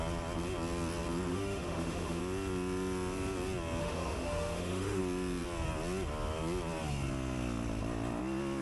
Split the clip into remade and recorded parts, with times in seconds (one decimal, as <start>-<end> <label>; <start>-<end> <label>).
0.0-1.3 recorded; 1.3-2.2 remade; 2.2-3.8 recorded; 3.8-5.0 remade; 5.0-8.6 recorded